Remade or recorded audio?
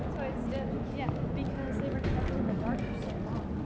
recorded